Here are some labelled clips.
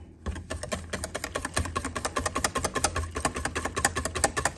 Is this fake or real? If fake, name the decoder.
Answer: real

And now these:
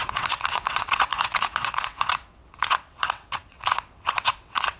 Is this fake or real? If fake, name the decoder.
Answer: fake, vocoder, WaveNeXt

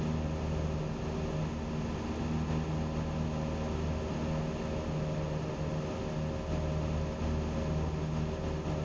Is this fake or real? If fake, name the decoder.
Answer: real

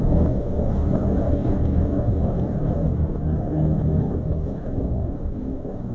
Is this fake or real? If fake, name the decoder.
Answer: fake, codec, DAC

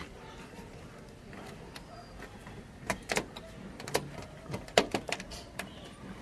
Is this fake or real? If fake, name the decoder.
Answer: real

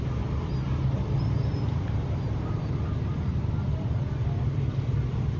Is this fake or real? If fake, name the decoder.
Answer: real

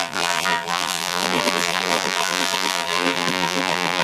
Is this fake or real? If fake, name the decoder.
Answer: fake, vocoder, BigVGAN v2